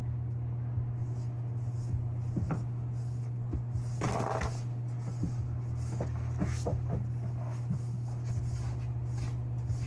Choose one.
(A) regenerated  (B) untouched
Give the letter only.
B